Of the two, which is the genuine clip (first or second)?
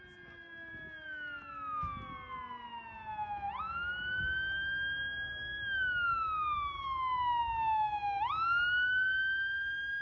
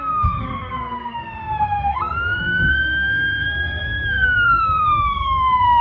first